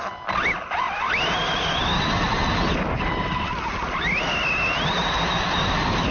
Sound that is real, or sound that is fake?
real